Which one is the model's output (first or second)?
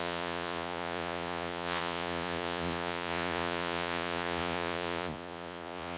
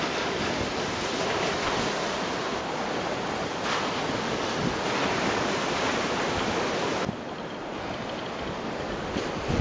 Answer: first